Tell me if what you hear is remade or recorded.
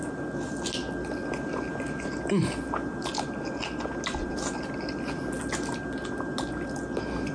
recorded